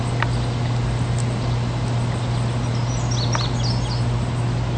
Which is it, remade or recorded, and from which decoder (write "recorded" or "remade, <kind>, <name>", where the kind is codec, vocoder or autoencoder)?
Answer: recorded